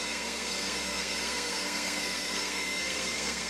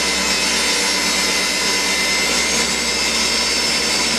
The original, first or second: second